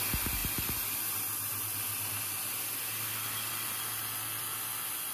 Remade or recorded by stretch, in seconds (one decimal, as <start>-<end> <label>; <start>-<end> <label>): 0.0-0.4 remade; 0.4-3.5 recorded; 3.5-5.1 remade